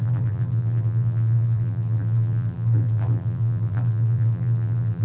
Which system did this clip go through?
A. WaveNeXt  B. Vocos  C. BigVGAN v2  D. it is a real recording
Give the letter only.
C